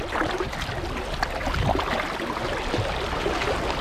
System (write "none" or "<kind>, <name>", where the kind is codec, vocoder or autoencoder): none